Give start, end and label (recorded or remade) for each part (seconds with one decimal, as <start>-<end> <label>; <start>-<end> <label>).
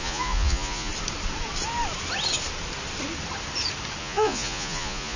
0.0-0.9 remade; 0.9-4.0 recorded; 4.0-5.2 remade